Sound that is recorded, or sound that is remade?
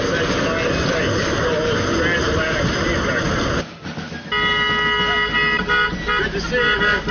recorded